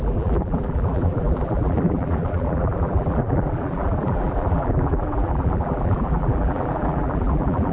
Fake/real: fake